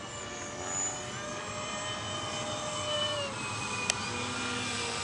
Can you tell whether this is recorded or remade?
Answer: recorded